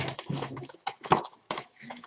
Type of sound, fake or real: fake